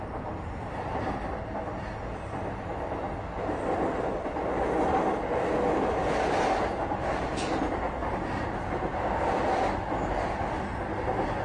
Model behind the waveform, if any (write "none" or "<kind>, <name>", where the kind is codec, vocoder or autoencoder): none